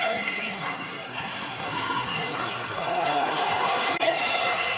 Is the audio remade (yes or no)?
yes